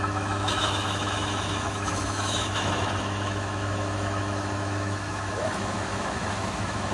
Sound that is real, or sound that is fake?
fake